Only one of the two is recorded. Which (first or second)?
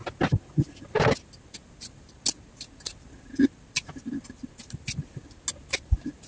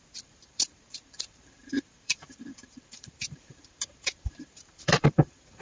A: first